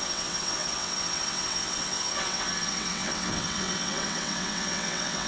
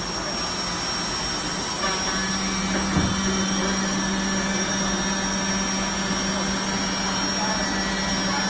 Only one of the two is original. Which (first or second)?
second